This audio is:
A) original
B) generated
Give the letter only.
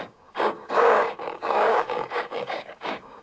B